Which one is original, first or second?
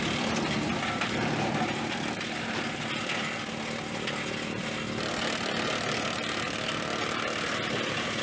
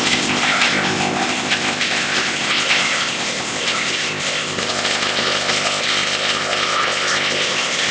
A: first